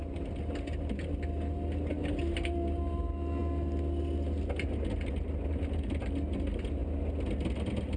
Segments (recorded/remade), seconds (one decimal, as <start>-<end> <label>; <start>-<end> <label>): 0.0-8.0 recorded